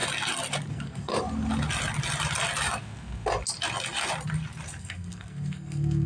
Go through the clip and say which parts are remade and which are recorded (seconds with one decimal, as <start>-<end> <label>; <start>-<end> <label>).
0.0-0.7 recorded; 0.7-1.1 remade; 1.1-4.8 recorded; 4.8-6.1 remade